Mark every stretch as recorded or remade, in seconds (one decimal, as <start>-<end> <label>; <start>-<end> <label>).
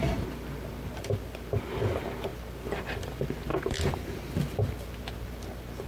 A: 0.0-5.9 remade